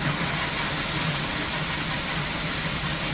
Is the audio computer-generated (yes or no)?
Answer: no